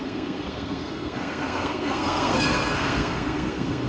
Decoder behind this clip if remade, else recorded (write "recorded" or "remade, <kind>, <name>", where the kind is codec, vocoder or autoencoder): remade, codec, SNAC